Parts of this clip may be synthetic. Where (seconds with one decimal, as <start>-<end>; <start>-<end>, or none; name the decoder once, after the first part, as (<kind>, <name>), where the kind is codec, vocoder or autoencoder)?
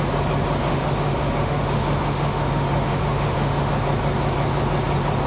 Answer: 0.7-3.7 (autoencoder, DAC-VAE)